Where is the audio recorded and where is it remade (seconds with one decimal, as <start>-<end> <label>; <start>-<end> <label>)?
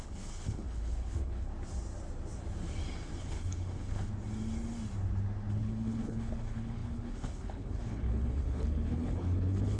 0.0-1.5 remade; 1.5-3.2 recorded; 3.2-4.1 remade; 4.1-5.5 recorded; 5.5-9.8 remade